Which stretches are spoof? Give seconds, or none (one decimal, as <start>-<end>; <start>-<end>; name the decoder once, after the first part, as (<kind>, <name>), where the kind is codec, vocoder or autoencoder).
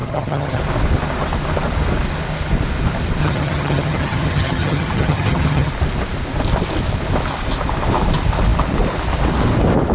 0.0-0.6 (vocoder, HiFi-GAN); 3.2-5.7